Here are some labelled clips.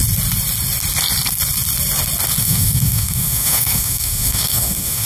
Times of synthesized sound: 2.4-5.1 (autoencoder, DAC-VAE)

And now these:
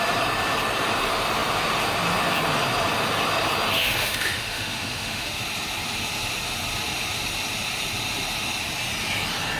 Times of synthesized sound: 3.7-5.3 (autoencoder, DAC-VAE)

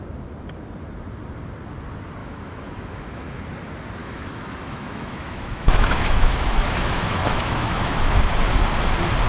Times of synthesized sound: 2.2-3.4 (autoencoder, DAC-VAE); 4.0-8.1

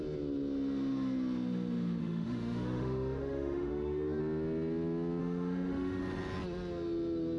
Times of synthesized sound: 2.0-4.2 (autoencoder, DAC-VAE); 5.2-6.0

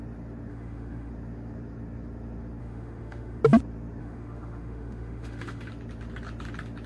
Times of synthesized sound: 0.5-1.1 (autoencoder, DAC-VAE); 2.6-3.4; 4.0-5.7